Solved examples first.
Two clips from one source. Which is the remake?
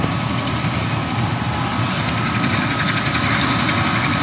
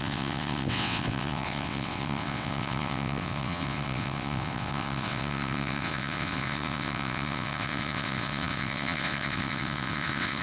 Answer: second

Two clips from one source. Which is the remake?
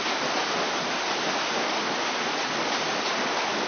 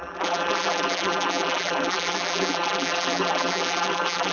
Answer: second